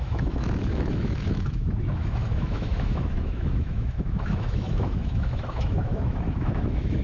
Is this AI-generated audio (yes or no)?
yes